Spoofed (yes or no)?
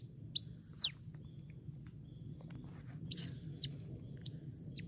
no